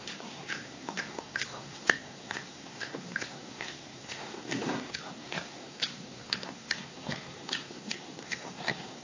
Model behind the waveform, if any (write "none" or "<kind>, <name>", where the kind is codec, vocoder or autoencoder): codec, SNAC